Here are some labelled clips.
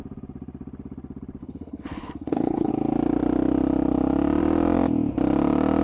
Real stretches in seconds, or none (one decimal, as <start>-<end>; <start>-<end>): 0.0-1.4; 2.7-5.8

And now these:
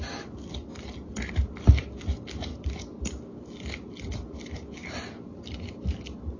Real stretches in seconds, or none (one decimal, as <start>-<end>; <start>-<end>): 0.0-6.4

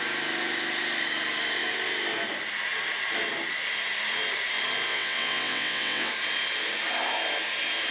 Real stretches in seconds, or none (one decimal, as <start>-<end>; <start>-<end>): 0.0-4.9; 6.1-7.9